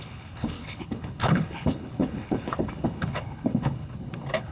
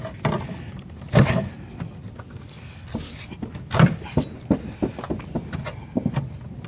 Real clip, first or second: second